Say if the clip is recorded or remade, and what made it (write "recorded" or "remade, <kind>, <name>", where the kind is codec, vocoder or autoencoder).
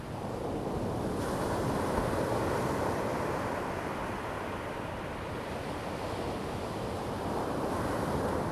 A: recorded